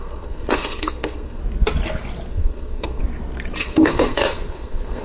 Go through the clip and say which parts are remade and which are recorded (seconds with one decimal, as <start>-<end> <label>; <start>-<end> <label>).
0.0-1.4 remade; 1.4-2.3 recorded; 2.3-3.0 remade; 3.0-3.6 recorded; 3.6-5.0 remade